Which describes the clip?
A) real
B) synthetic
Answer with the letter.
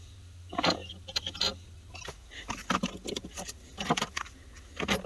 B